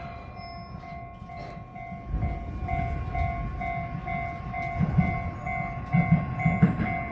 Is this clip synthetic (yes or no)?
no